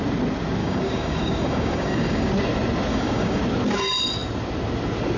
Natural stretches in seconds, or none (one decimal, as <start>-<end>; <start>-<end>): 0.0-0.6; 2.3-2.9; 3.4-5.2